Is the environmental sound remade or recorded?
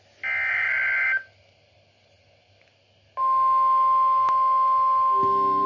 recorded